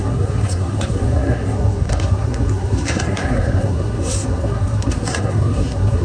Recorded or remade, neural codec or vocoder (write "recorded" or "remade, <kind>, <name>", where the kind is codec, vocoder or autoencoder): remade, codec, SNAC